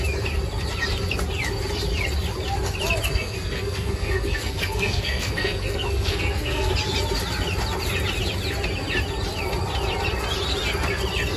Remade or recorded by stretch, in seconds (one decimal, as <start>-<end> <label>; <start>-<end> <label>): 0.0-3.1 recorded; 3.1-6.7 remade; 6.7-11.4 recorded